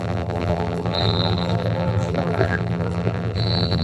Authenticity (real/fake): fake